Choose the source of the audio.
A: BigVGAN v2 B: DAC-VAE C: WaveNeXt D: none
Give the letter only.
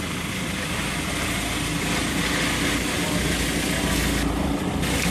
D